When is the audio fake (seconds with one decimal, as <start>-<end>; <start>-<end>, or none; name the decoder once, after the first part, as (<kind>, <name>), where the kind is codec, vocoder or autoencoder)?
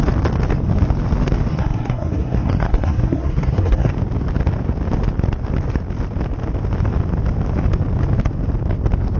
1.5-3.9 (codec, SNAC)